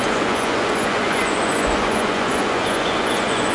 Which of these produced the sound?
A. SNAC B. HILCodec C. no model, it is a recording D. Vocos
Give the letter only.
D